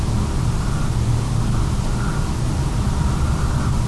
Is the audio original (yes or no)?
yes